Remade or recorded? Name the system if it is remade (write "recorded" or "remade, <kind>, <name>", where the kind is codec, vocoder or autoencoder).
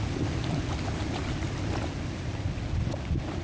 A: recorded